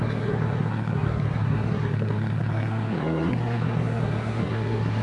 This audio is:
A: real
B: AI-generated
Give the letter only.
B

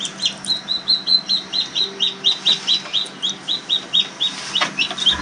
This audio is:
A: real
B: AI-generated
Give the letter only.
A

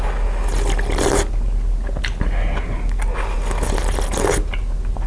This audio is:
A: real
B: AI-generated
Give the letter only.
A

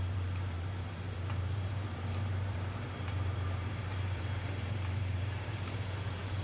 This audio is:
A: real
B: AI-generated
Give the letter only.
B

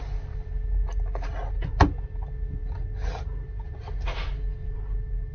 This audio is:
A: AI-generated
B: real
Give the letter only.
B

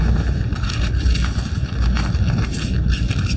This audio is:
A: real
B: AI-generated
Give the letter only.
A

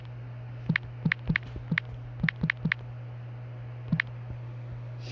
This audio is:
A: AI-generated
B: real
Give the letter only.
B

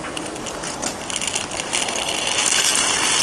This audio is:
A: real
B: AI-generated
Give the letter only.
A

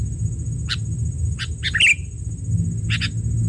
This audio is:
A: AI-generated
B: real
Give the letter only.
B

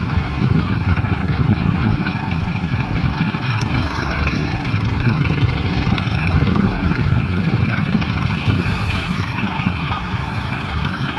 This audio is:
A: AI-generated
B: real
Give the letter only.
A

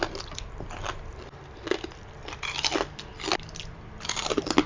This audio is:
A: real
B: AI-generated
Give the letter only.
A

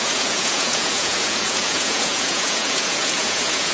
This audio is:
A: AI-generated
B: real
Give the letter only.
A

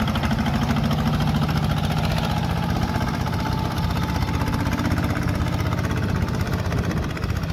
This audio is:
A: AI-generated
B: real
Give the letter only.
B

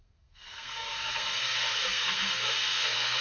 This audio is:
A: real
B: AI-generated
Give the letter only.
B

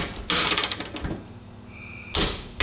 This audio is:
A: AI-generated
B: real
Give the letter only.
B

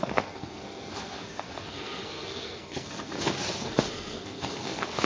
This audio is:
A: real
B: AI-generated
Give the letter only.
B